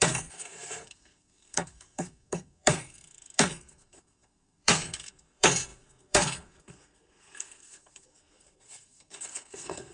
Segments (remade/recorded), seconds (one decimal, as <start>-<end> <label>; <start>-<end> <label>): 0.0-9.9 remade